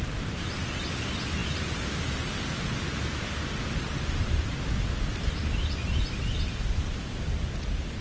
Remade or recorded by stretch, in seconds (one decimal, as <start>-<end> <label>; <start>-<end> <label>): 0.0-8.0 recorded